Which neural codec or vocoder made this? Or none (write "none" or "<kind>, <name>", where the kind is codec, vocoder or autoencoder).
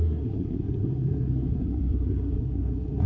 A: codec, SNAC